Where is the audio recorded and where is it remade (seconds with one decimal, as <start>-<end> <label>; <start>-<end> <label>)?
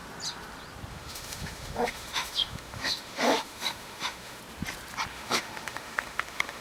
0.0-0.9 recorded; 0.9-4.4 remade; 4.4-5.1 recorded; 5.1-6.6 remade